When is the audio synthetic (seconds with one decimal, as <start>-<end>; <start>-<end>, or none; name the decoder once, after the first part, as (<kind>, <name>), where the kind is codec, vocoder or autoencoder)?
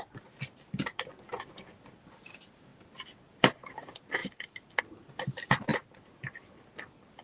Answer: 0.0-2.7 (vocoder, BigVGAN v2); 3.4-4.2; 4.8-5.7